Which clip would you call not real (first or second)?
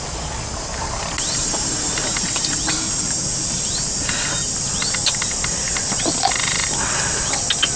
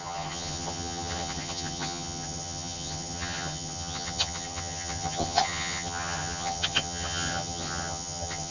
second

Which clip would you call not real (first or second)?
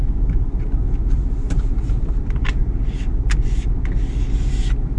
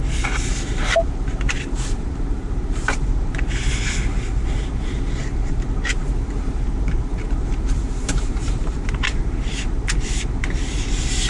second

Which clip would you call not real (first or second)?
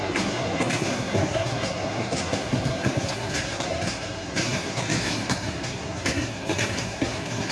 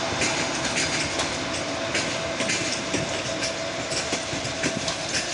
first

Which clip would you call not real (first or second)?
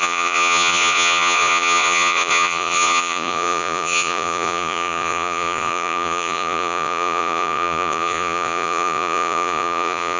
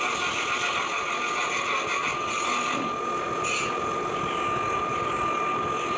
first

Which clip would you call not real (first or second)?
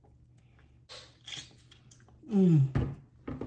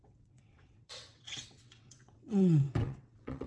second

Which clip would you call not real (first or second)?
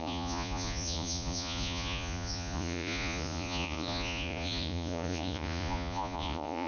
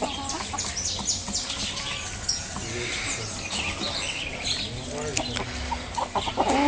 first